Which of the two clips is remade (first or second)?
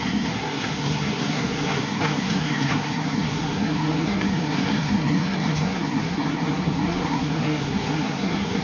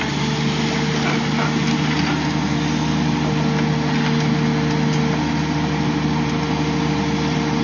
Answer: first